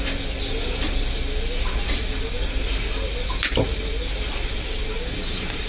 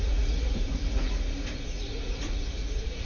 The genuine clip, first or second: first